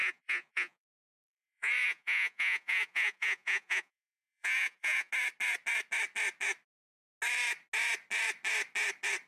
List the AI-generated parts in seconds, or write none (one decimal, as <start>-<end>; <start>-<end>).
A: 0.0-5.1